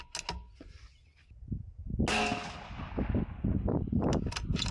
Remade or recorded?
recorded